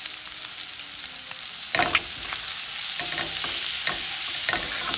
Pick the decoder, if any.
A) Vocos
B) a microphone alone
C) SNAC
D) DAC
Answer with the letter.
B